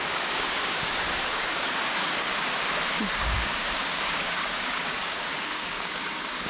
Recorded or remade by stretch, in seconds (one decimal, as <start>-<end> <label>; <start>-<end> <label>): 0.0-2.3 remade; 2.3-2.9 recorded; 2.9-6.5 remade